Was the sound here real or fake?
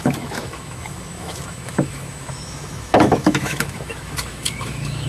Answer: fake